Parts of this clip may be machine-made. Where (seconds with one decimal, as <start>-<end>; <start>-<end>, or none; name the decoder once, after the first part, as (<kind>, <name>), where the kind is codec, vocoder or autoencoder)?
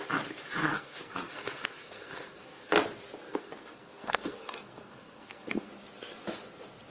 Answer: 0.6-2.7 (codec, SNAC); 3.3-5.7